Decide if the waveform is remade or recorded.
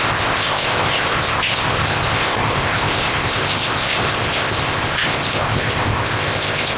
remade